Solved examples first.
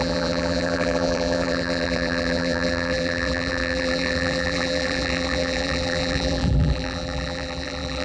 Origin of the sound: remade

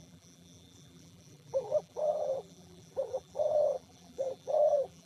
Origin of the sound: remade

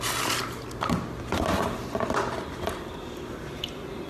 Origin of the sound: recorded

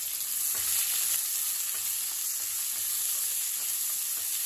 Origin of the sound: recorded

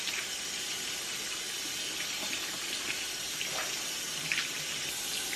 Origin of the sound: recorded